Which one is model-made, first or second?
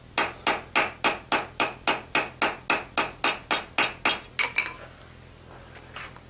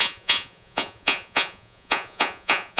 second